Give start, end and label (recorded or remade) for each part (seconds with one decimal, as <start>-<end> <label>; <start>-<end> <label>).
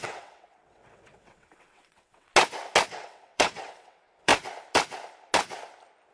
0.0-2.3 remade; 2.3-2.9 recorded; 2.9-4.3 remade; 4.3-6.1 recorded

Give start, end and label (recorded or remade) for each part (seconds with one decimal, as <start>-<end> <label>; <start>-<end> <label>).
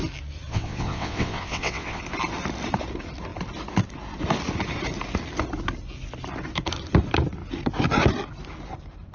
0.0-0.5 recorded; 0.5-2.0 remade; 2.0-9.1 recorded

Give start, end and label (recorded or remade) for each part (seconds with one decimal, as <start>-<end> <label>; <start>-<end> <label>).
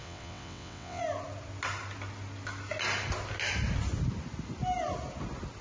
0.0-1.0 remade; 1.0-5.6 recorded